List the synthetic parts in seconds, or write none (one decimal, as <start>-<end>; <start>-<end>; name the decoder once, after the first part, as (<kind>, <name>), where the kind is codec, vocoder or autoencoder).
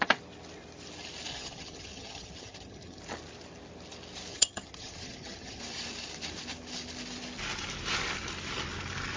1.3-3.0 (vocoder, HiFi-GAN); 4.3-5.6